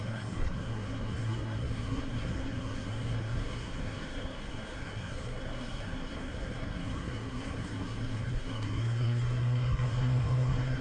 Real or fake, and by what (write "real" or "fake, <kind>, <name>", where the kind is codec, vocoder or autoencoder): fake, codec, SNAC